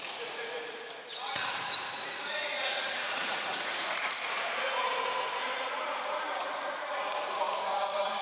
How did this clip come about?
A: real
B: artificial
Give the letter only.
B